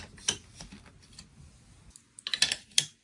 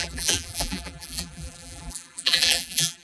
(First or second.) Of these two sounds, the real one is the first